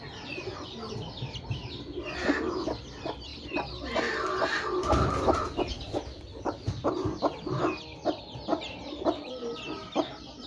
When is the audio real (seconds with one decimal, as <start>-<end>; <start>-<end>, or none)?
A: 0.0-8.5; 9.3-10.5